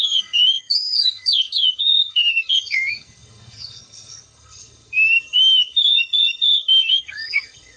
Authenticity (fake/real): fake